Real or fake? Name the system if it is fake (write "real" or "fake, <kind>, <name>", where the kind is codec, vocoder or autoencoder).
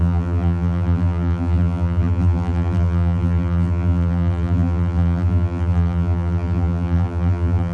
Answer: fake, vocoder, BigVGAN v2